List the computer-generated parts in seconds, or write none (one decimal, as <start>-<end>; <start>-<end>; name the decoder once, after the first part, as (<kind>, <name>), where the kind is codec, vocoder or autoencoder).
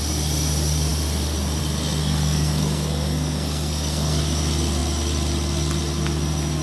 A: 2.0-4.2 (codec, SNAC)